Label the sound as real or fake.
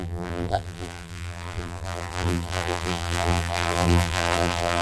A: fake